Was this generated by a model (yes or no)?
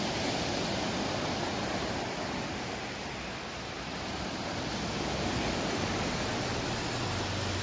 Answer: no